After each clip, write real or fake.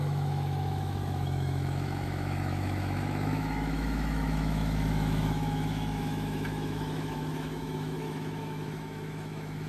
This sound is fake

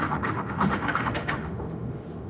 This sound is fake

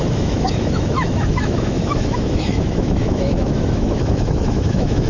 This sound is fake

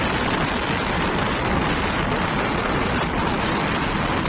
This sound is real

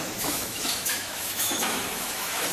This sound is fake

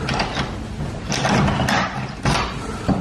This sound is real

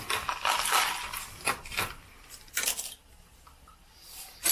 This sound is real